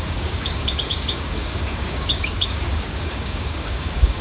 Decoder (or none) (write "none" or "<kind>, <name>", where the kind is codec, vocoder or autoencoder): codec, DAC